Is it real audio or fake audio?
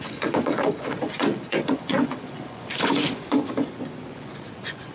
fake